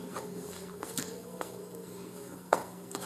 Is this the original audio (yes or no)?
no